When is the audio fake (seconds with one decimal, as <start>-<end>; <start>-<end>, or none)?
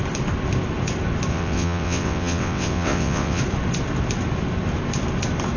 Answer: 1.3-3.4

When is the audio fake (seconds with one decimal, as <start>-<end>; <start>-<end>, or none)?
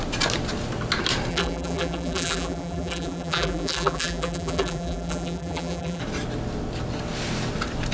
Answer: 1.3-6.0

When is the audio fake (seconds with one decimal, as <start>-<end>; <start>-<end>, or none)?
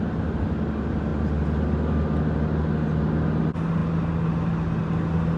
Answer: none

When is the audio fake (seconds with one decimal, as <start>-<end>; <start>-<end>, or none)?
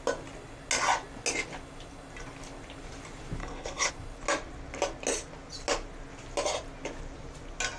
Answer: 3.4-3.9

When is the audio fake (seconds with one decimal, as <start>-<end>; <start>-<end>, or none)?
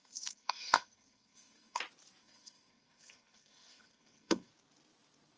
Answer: 0.0-1.8; 2.2-4.5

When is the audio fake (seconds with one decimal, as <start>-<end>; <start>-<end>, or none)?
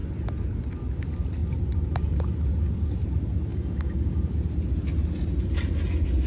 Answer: 3.5-4.2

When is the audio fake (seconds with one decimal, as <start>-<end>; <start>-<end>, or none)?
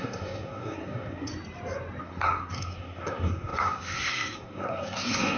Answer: 0.0-1.3; 2.0-5.4